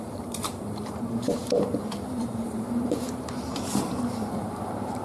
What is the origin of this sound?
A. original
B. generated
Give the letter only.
B